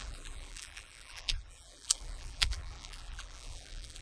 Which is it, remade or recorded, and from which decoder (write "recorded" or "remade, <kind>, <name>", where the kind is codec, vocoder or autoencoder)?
remade, vocoder, BigVGAN v2